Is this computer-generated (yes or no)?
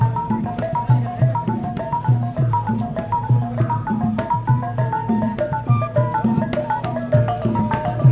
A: yes